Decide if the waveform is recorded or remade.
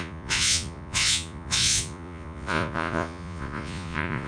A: remade